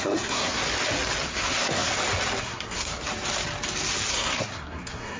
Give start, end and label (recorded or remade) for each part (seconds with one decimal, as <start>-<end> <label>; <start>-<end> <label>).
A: 0.0-0.6 remade; 0.6-1.3 recorded; 1.3-1.9 remade; 1.9-2.4 recorded; 2.4-2.9 remade; 2.9-4.1 recorded; 4.1-5.2 remade